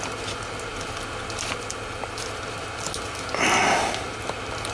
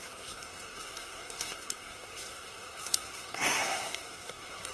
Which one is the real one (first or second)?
first